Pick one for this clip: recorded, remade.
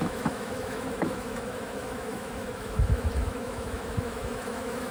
remade